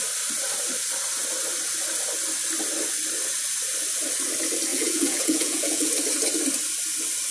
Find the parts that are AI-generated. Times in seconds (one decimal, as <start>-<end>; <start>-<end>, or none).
4.7-5.9